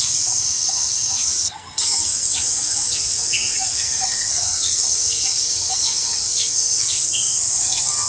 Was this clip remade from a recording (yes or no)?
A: yes